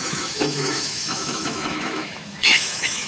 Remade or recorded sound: remade